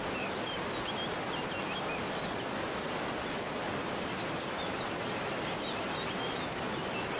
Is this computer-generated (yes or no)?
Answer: no